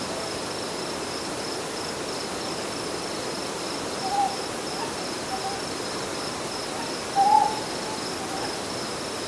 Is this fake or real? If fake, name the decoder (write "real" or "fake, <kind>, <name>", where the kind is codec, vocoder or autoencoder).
real